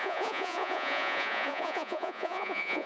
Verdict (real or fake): fake